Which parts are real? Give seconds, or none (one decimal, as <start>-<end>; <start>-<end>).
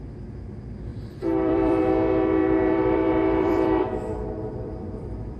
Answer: 0.0-0.9; 1.8-2.4